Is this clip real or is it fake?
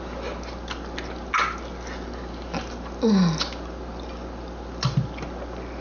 real